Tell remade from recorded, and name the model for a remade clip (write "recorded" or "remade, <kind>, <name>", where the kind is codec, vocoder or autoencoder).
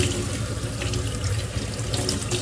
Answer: recorded